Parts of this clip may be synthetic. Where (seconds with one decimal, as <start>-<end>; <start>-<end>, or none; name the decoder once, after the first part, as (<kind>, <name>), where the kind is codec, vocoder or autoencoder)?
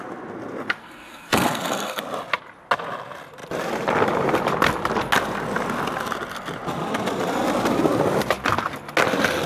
0.8-2.0 (codec, SNAC)